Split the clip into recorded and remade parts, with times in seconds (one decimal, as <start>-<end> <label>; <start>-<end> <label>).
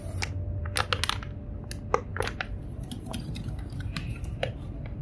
0.0-2.1 recorded; 2.1-5.0 remade